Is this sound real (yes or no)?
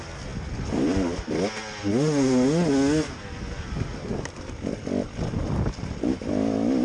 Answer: yes